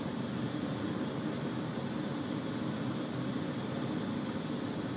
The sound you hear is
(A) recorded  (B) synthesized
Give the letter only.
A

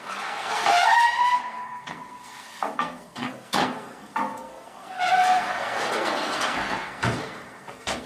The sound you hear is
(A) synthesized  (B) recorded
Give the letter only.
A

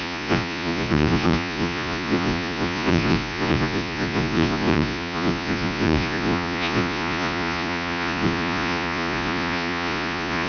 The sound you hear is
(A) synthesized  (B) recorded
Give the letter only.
A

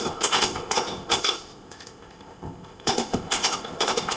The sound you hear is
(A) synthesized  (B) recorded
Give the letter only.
A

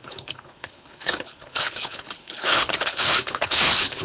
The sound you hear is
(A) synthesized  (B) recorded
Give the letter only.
A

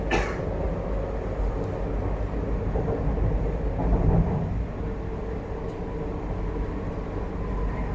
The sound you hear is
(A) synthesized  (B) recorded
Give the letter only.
B